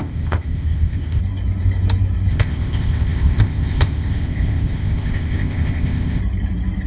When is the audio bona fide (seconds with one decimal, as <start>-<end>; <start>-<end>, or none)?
1.2-2.3; 6.2-6.9